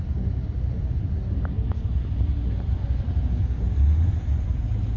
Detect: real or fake real